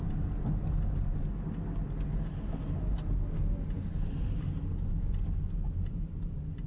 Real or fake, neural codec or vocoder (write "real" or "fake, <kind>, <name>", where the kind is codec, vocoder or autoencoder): real